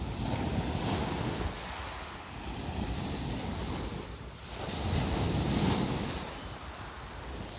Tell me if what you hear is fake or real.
real